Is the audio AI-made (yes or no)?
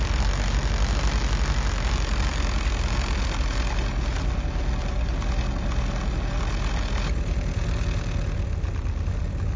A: no